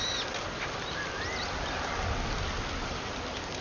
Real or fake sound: real